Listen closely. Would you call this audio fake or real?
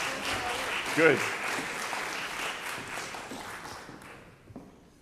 real